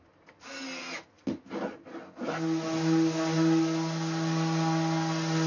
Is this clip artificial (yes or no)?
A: no